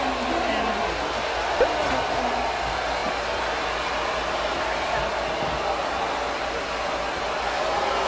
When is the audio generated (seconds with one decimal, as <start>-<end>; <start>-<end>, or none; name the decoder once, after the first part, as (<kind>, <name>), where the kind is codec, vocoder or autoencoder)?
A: none